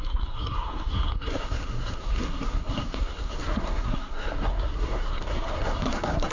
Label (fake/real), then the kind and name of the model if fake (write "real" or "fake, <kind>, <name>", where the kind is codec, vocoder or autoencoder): fake, codec, SNAC